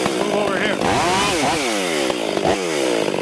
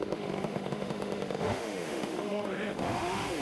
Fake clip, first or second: second